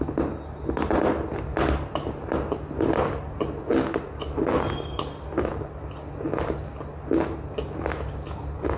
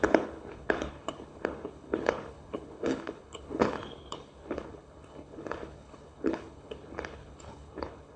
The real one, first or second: first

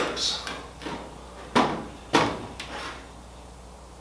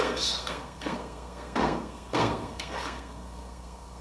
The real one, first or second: first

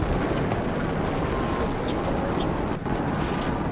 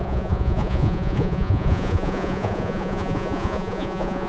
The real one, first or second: first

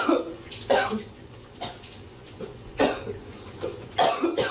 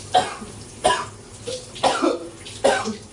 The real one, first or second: second